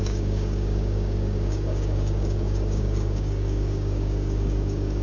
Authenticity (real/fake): fake